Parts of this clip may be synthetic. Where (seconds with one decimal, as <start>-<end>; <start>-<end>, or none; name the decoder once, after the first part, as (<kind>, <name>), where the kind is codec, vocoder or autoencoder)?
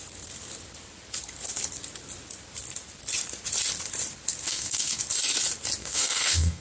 4.4-5.0 (codec, SNAC); 5.8-6.6